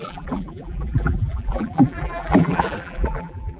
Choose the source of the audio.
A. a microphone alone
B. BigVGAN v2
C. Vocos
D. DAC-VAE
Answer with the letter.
B